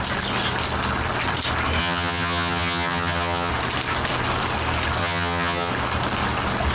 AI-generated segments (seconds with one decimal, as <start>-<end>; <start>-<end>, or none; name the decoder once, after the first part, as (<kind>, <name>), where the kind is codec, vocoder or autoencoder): 1.8-3.5 (vocoder, HiFi-GAN); 5.0-5.7